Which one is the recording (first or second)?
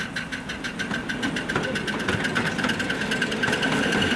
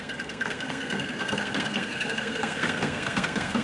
first